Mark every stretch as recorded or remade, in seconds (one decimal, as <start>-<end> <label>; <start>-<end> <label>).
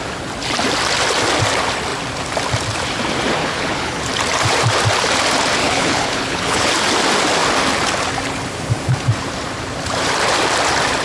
0.0-3.4 recorded; 3.4-4.0 remade; 4.0-5.6 recorded; 5.6-6.7 remade; 6.7-11.0 recorded